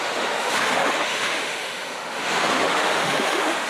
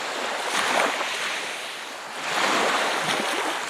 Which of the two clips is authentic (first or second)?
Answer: second